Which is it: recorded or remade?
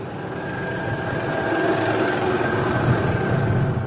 recorded